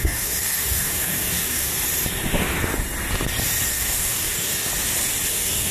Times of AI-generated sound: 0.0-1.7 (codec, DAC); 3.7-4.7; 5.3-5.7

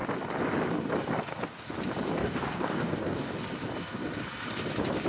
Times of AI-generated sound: 2.2-3.3 (codec, DAC)

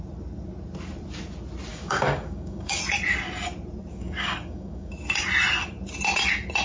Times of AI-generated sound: 1.7-2.8 (codec, DAC); 3.9-4.9

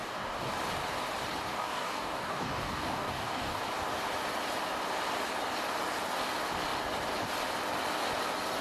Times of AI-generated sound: 0.0-0.5 (codec, DAC); 1.5-3.6

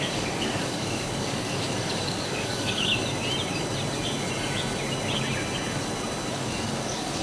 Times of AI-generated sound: 0.0-2.9 (codec, DAC); 6.3-7.2

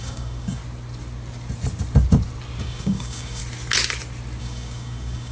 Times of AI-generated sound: 0.0-0.6 (codec, DAC); 2.6-3.4; 4.4-5.3